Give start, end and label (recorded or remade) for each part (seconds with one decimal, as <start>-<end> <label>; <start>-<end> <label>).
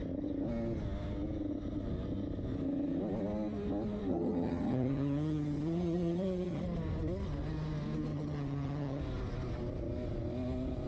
0.0-4.1 recorded; 4.1-6.6 remade; 6.6-8.1 recorded; 8.1-9.0 remade; 9.0-10.9 recorded